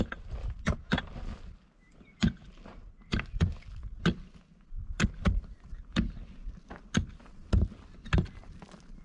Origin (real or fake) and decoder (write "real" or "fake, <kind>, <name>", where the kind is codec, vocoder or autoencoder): real